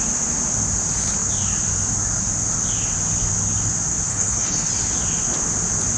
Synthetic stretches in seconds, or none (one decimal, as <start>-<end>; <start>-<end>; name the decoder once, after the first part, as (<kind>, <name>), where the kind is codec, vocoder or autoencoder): 4.1-4.7 (codec, HILCodec)